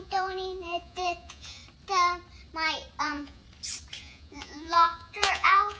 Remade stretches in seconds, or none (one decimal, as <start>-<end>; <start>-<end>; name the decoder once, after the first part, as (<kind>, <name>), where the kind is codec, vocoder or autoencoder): 0.0-1.6 (vocoder, Vocos); 3.0-3.4; 4.0-5.8